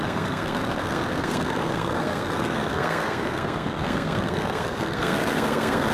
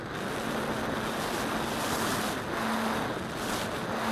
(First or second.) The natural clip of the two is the second